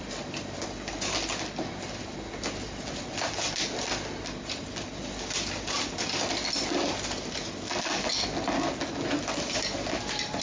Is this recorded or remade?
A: recorded